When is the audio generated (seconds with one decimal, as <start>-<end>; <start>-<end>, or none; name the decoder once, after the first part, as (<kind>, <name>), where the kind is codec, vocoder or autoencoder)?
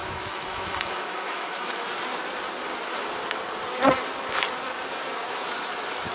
0.0-1.9 (autoencoder, DAC-VAE)